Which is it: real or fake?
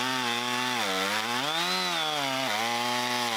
real